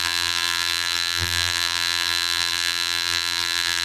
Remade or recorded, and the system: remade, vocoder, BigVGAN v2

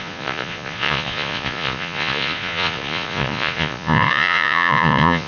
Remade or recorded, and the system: remade, vocoder, Vocos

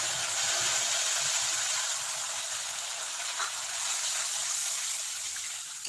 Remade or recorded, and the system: recorded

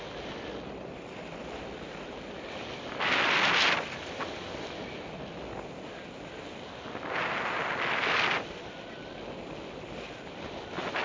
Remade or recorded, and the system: recorded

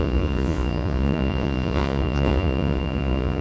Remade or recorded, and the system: remade, vocoder, Vocos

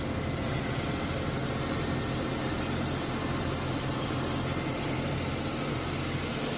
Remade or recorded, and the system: recorded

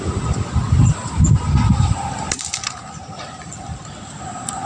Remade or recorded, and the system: recorded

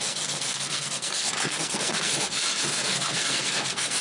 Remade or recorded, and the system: remade, codec, SNAC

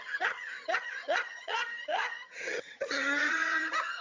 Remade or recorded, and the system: remade, vocoder, HiFi-GAN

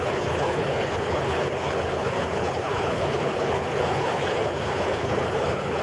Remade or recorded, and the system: remade, codec, HILCodec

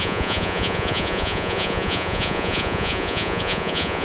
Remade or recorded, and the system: remade, vocoder, Vocos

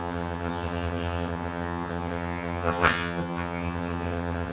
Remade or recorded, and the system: remade, vocoder, HiFi-GAN